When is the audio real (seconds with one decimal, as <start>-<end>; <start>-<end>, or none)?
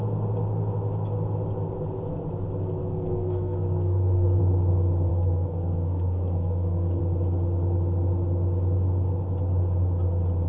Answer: 0.0-2.8; 4.4-5.1; 7.0-10.5